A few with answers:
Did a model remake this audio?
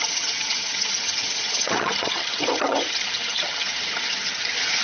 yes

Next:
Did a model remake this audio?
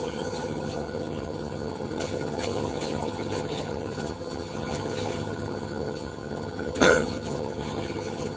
yes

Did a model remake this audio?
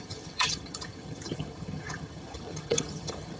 yes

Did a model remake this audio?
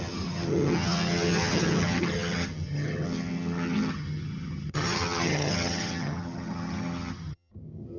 yes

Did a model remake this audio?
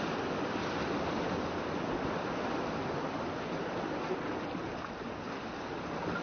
no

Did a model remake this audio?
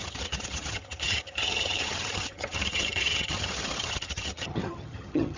yes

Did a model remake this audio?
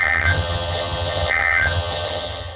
yes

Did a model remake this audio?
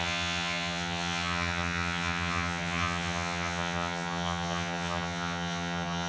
yes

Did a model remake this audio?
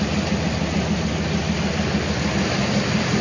no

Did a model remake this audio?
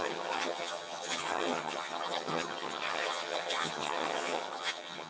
yes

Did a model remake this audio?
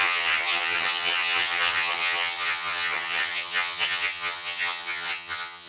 yes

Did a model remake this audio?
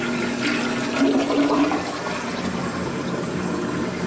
no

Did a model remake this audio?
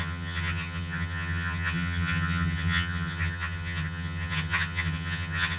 yes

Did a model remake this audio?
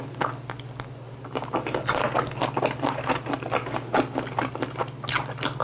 no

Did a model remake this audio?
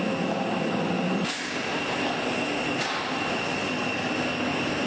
no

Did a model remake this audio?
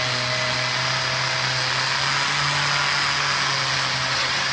no